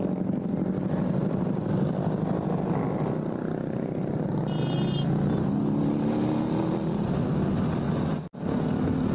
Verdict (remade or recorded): recorded